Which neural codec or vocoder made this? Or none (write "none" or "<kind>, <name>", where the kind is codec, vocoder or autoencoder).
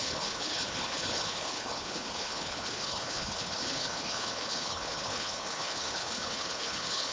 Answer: codec, HILCodec